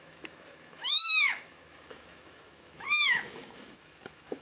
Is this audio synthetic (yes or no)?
yes